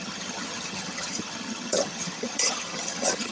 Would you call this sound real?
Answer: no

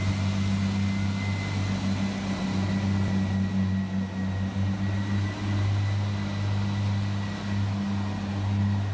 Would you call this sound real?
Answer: yes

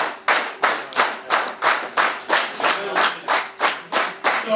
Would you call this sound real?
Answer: yes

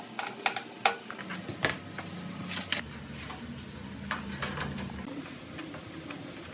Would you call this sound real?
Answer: yes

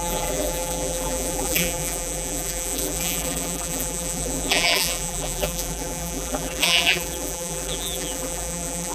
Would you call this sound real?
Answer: no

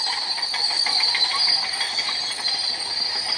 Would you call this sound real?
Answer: yes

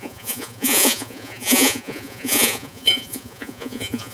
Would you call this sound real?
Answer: no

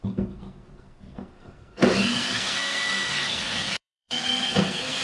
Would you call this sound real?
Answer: no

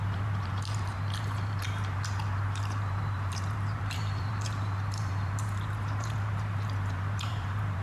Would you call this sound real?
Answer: no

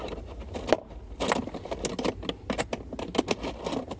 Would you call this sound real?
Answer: yes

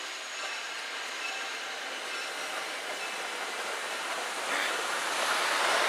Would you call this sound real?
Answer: yes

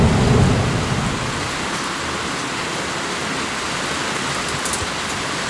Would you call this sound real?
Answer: yes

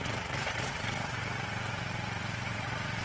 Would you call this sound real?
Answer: no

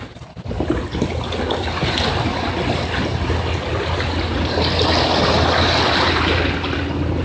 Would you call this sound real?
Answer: yes